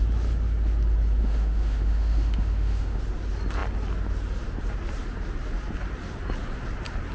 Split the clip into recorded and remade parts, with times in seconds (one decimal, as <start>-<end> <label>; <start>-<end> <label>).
0.0-1.2 recorded; 1.2-3.0 remade; 3.0-7.1 recorded